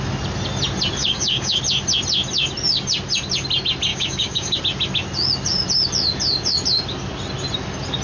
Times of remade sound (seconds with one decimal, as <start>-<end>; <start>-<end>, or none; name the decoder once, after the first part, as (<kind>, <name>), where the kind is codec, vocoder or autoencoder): 1.0-1.6 (codec, DAC); 3.9-4.6